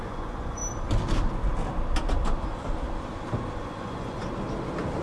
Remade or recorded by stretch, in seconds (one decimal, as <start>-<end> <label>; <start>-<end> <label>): 0.0-0.6 remade; 0.6-3.6 recorded; 3.6-4.2 remade; 4.2-5.0 recorded